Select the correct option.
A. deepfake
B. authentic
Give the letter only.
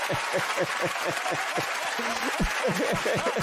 A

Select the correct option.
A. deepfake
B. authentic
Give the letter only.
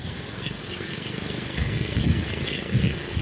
A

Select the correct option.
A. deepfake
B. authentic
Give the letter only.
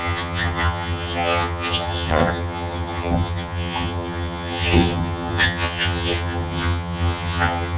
A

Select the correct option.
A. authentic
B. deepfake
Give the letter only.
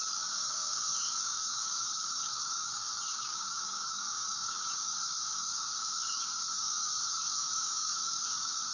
B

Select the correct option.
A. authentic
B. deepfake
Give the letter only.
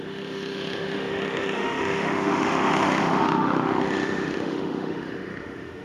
B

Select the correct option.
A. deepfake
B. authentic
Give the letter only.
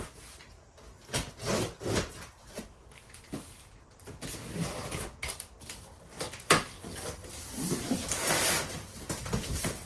B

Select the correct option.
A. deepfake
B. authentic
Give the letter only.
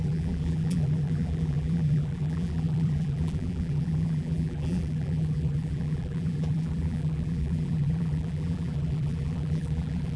A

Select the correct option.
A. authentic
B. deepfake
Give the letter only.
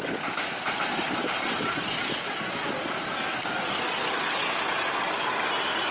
A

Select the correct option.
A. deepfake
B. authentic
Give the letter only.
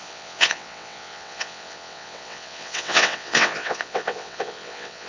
A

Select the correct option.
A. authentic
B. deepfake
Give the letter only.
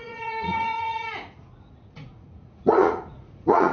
B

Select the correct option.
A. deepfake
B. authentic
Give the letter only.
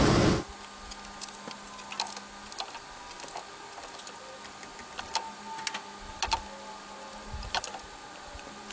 B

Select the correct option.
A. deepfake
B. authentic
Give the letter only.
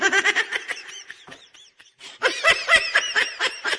A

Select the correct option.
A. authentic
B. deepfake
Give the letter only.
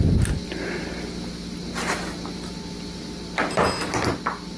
A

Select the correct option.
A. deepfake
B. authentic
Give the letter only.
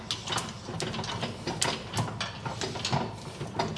B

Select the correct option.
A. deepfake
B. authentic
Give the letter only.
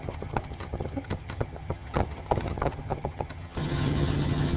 A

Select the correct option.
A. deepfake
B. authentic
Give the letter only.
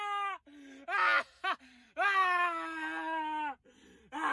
B